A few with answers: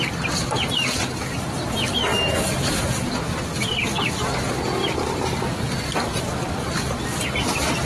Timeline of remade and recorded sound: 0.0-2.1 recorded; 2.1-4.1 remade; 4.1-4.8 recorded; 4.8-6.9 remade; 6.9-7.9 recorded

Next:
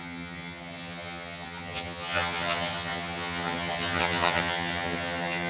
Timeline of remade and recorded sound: 0.0-5.5 remade

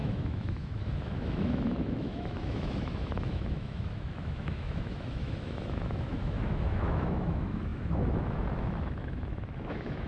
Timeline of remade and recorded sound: 0.0-10.1 remade

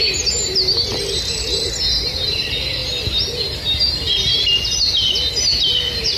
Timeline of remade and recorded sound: 0.0-6.2 recorded

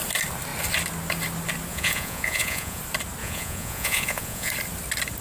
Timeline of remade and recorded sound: 0.0-1.7 recorded; 1.7-2.8 remade; 2.8-3.2 recorded; 3.2-4.5 remade; 4.5-5.2 recorded

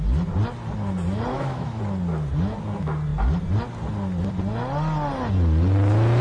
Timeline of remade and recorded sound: 0.0-1.3 recorded; 1.3-1.8 remade; 1.8-6.2 recorded

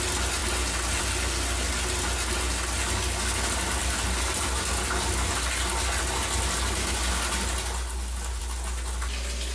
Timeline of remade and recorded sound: 0.0-9.5 recorded